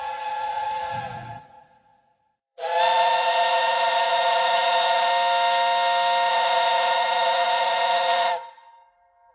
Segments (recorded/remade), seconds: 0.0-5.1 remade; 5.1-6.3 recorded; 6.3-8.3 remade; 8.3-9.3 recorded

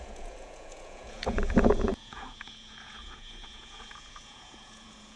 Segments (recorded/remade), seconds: 0.0-5.2 remade

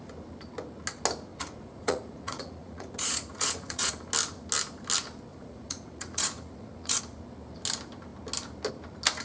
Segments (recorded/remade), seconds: 0.0-1.3 recorded; 1.3-3.9 remade; 3.9-5.3 recorded; 5.3-7.0 remade; 7.0-9.2 recorded